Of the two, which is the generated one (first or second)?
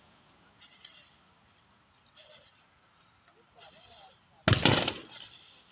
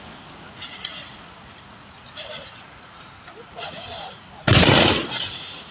second